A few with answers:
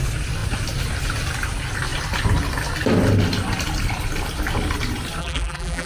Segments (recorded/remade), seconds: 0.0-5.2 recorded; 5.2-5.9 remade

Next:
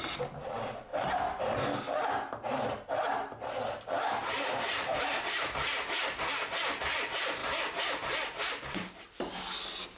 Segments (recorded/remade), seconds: 0.0-10.0 recorded

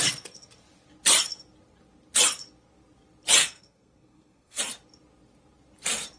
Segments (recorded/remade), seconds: 0.0-3.4 recorded; 3.4-4.6 remade; 4.6-6.2 recorded

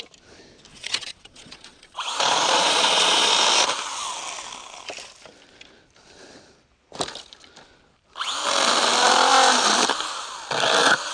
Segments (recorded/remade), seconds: 0.0-0.7 recorded; 0.7-3.3 remade; 3.3-11.1 recorded

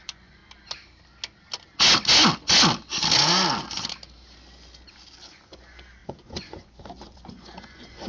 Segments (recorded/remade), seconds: 0.0-0.4 remade; 0.4-5.3 recorded; 5.3-8.1 remade

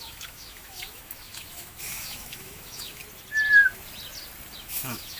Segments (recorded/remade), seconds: 0.0-3.0 remade; 3.0-4.6 recorded; 4.6-5.2 remade